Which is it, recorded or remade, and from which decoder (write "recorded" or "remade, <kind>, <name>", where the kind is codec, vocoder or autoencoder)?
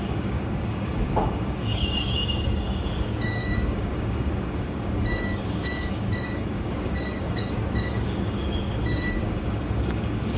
remade, codec, DAC